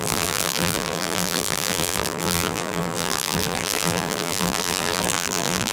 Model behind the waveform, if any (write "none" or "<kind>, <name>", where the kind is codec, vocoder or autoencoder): vocoder, BigVGAN v2